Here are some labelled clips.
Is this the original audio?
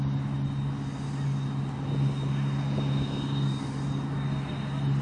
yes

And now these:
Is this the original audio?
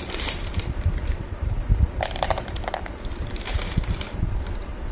no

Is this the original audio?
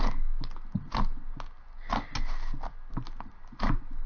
yes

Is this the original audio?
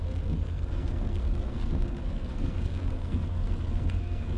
no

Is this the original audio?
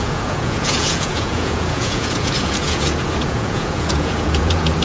no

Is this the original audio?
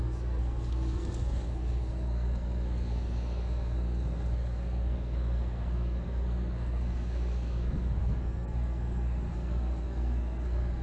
no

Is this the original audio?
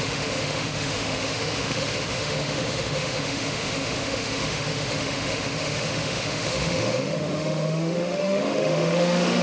no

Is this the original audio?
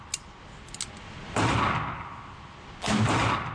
yes